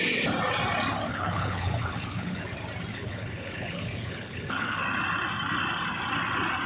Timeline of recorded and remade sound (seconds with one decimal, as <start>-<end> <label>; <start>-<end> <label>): 0.0-1.1 recorded; 1.1-2.4 remade; 2.4-2.9 recorded; 2.9-4.8 remade; 4.8-6.7 recorded